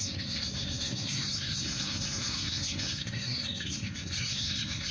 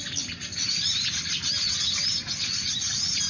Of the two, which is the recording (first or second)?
second